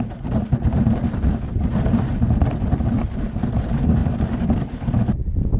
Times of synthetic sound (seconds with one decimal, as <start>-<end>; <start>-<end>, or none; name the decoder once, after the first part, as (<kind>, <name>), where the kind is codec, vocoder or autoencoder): 0.0-4.0 (vocoder, BigVGAN v2); 4.8-5.6